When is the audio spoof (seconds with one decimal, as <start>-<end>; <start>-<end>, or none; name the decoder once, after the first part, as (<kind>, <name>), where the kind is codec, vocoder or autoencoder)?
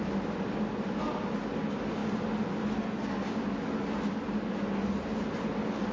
none